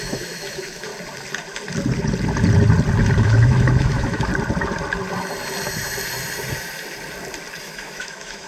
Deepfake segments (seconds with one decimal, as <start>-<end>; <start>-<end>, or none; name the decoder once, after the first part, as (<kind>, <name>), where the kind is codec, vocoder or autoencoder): 0.0-0.9 (autoencoder, DAC-VAE); 3.2-4.3; 7.6-8.5